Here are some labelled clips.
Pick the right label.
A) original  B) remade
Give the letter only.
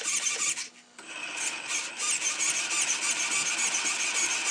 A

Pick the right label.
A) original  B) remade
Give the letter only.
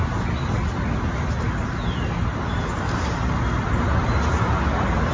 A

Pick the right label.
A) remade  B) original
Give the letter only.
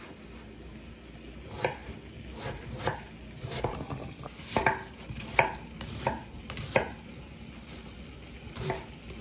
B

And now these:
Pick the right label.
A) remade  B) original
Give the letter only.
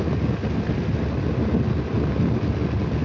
B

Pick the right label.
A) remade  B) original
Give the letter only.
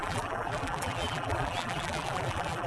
A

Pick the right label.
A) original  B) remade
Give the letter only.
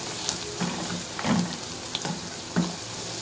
A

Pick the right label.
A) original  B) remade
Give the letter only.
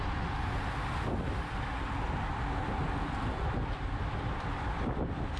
B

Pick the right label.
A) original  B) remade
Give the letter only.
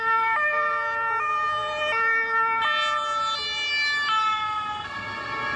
A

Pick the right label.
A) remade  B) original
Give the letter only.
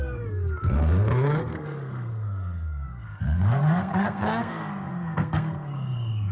A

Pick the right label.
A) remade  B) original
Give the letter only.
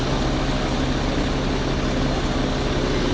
B